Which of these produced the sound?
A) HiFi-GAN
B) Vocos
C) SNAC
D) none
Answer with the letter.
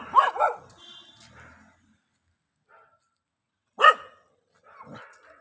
D